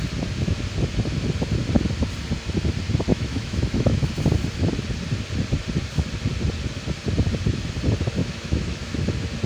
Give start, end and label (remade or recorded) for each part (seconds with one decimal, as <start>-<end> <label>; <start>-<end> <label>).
0.0-3.1 recorded; 3.1-4.2 remade; 4.2-8.2 recorded; 8.2-9.0 remade; 9.0-9.5 recorded